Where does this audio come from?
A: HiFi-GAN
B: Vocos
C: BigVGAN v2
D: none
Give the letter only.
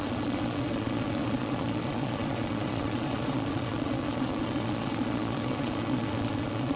B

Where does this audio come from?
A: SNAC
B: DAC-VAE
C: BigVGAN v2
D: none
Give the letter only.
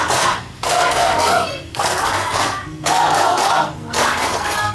A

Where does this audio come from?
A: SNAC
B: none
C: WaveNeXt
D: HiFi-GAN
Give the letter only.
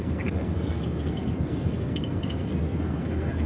A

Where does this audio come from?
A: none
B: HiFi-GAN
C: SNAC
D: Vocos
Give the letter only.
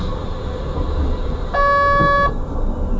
A